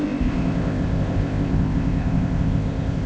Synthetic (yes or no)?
yes